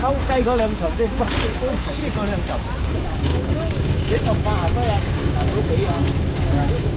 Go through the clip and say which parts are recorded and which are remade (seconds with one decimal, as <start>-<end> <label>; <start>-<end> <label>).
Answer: 0.0-2.0 remade; 2.0-2.8 recorded; 2.8-7.0 remade